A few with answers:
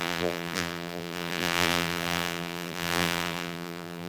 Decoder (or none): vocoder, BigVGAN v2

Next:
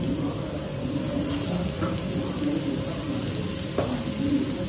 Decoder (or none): none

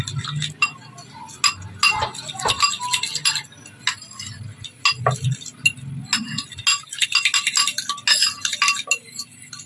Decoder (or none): none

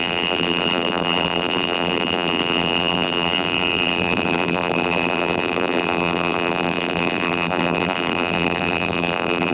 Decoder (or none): vocoder, BigVGAN v2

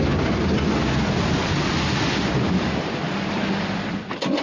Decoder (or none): none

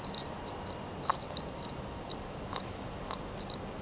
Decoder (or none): none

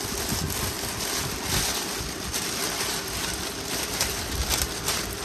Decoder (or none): none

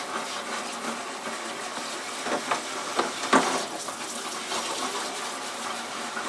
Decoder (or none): none